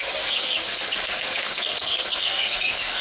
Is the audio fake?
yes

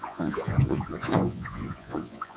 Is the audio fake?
yes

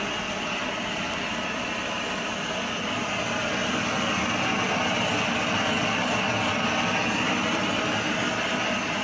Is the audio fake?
no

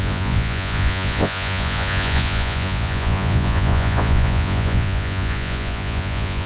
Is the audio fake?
yes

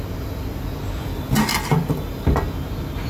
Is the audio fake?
no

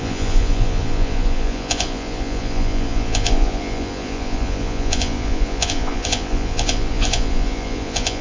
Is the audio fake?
yes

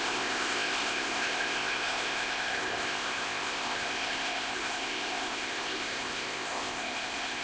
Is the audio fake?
yes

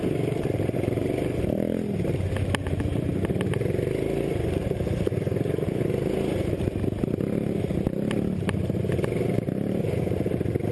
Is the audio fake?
no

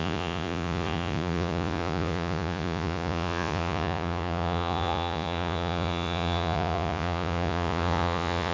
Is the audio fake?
yes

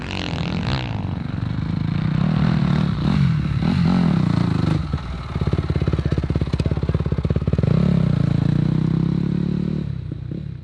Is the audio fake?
no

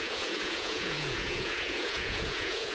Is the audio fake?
yes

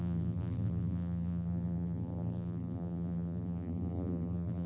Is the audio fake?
yes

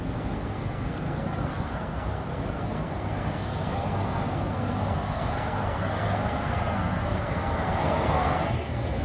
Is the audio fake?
yes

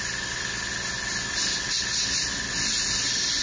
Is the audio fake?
no